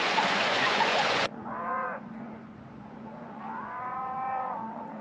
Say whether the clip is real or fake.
fake